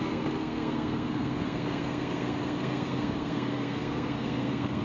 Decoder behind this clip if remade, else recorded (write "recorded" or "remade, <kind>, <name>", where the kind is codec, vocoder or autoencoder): remade, codec, SNAC